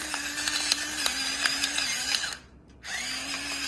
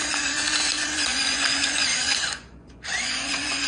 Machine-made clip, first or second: second